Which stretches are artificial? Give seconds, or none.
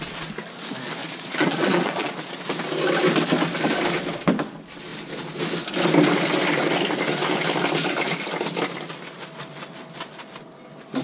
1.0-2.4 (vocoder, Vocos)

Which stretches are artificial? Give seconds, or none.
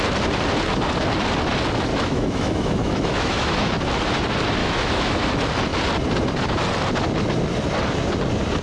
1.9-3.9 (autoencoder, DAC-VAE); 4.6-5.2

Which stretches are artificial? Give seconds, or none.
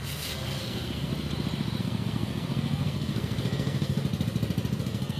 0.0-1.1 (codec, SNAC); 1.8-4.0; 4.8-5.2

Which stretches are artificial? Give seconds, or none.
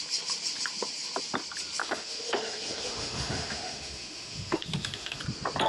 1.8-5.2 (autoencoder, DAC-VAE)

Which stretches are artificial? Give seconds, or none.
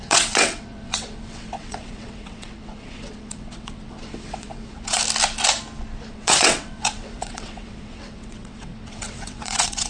0.0-5.0 (vocoder, WaveNeXt); 6.1-9.9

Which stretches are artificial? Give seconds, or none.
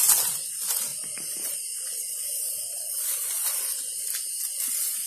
0.9-4.0 (vocoder, BigVGAN v2)